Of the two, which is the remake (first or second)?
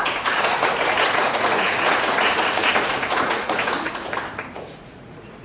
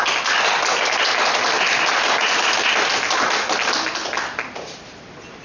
first